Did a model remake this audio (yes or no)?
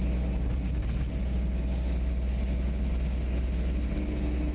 no